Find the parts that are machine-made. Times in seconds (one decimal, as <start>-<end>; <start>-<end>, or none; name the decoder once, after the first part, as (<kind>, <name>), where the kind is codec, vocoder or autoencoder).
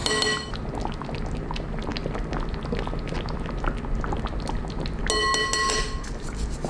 none